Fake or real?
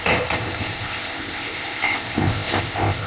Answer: fake